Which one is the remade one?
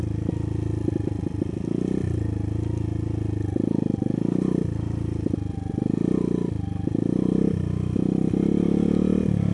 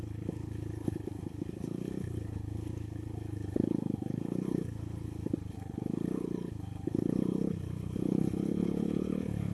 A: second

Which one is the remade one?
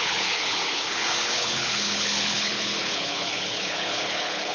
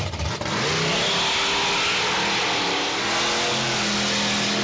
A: first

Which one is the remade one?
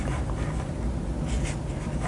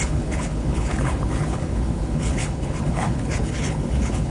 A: second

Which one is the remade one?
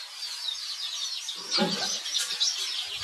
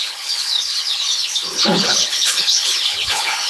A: second